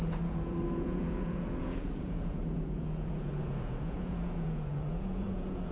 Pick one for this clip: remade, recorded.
remade